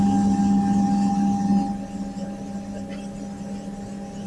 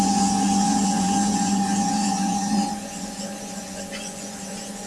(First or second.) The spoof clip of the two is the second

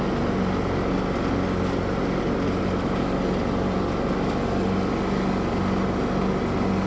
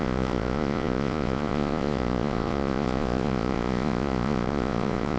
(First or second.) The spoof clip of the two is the second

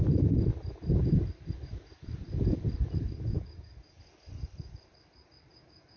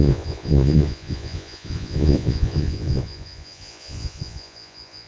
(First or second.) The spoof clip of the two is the second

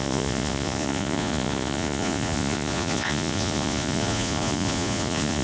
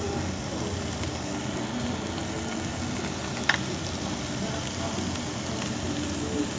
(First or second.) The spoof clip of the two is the first